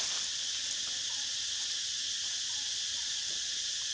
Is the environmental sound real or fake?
real